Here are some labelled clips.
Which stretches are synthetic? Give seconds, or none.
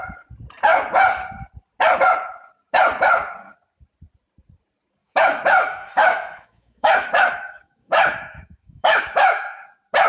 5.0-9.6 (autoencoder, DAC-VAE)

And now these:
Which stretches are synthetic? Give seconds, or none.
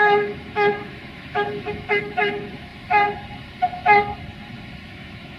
0.0-2.7 (autoencoder, DAC-VAE); 4.9-5.4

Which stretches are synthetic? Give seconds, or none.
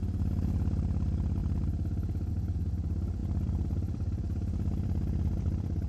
0.0-1.4 (vocoder, BigVGAN v2); 2.3-5.9